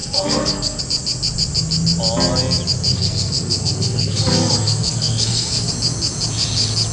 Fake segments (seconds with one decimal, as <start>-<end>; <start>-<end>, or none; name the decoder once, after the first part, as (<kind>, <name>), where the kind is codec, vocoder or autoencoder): 0.0-0.8 (codec, SNAC); 2.9-5.7